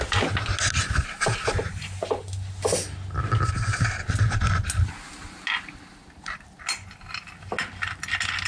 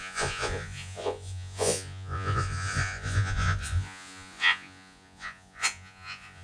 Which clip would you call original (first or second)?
first